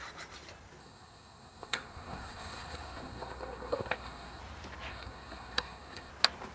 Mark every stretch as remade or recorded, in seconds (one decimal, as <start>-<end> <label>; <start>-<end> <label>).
0.0-0.8 recorded; 0.8-4.4 remade; 4.4-4.9 recorded; 4.9-6.1 remade; 6.1-6.5 recorded